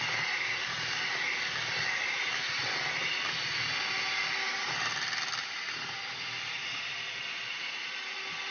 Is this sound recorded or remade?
recorded